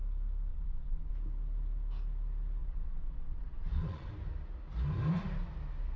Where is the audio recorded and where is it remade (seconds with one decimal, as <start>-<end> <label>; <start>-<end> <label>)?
0.0-0.5 recorded; 0.5-1.1 remade; 1.1-2.6 recorded; 2.6-4.1 remade; 4.1-6.0 recorded